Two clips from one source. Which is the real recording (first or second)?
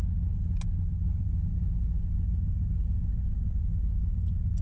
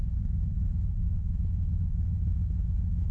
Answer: first